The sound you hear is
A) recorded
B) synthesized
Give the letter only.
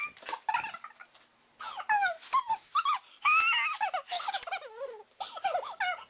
A